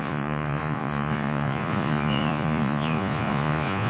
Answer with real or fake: fake